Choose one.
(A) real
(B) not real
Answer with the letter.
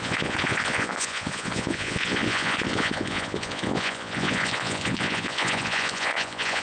B